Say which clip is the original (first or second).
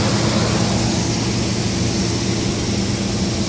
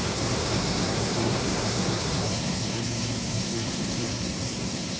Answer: first